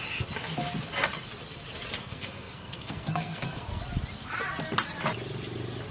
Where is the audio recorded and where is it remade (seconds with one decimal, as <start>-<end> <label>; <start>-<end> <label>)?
0.0-2.0 recorded; 2.0-3.8 remade; 3.8-5.9 recorded